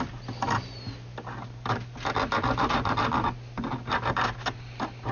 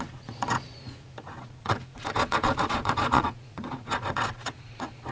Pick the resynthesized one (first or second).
second